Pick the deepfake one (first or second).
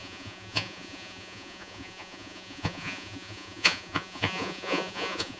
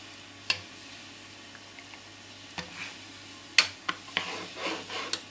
first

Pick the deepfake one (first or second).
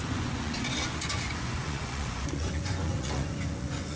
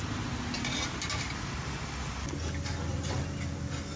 first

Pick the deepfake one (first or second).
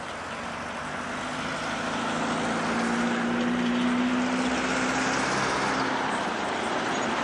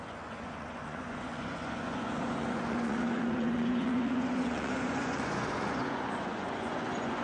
second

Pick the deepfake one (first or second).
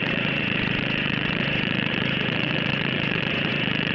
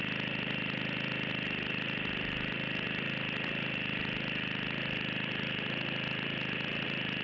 first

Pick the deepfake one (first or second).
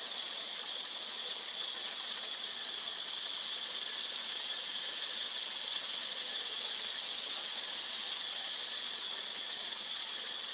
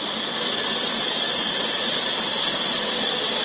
first